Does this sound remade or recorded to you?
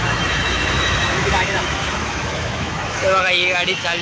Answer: remade